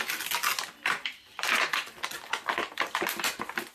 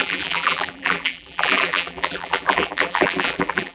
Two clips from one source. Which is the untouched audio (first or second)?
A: first